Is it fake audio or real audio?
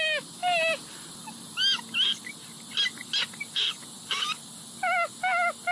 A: real